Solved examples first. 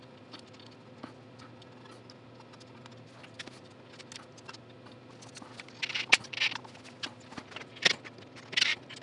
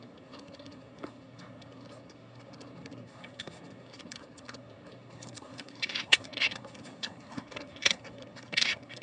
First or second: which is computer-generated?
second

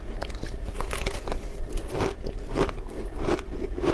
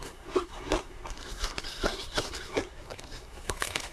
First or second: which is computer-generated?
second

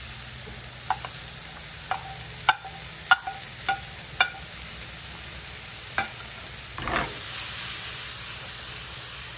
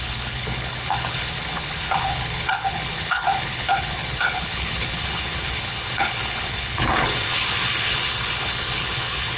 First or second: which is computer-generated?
second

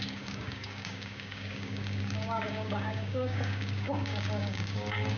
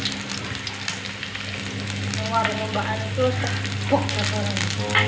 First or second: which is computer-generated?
first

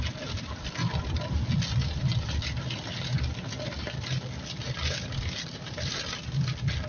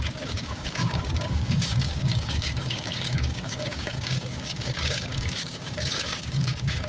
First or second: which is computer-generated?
second